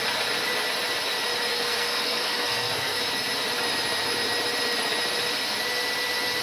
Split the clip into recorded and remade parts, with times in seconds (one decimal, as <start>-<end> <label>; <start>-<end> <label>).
0.0-1.5 recorded; 1.5-3.0 remade; 3.0-6.4 recorded